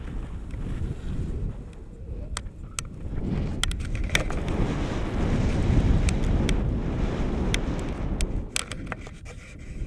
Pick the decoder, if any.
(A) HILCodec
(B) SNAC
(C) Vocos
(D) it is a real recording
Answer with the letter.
D